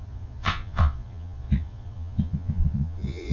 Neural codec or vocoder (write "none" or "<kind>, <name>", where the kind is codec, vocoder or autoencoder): vocoder, Vocos